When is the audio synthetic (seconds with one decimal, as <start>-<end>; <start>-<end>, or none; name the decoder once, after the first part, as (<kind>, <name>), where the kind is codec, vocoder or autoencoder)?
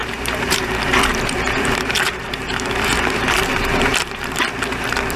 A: 0.0-0.7 (vocoder, BigVGAN v2); 1.1-4.2